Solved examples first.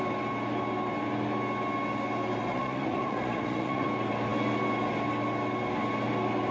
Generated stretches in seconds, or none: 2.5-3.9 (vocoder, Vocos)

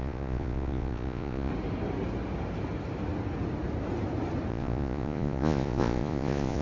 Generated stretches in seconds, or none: 0.0-1.5 (vocoder, Vocos); 4.5-6.6

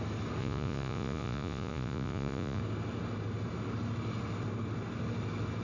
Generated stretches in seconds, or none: 0.4-2.6 (vocoder, Vocos)

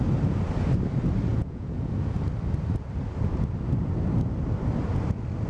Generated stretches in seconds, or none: 1.3-1.9 (vocoder, Vocos)

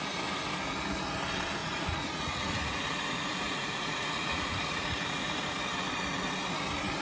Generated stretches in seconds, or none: 1.6-5.6 (vocoder, Vocos)

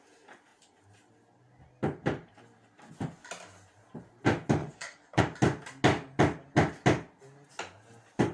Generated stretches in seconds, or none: 4.6-5.2 (vocoder, Vocos)

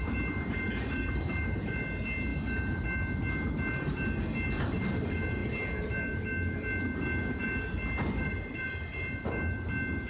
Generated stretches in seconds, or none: none